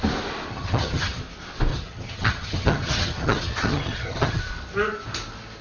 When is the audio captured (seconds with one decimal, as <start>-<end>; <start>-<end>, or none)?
0.0-0.5; 1.2-1.7; 4.4-5.6